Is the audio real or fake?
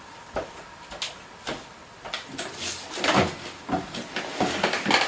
real